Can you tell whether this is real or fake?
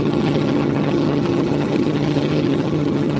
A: fake